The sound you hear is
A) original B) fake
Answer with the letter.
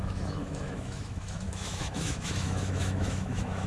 B